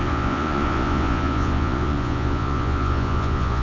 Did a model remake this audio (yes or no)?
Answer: yes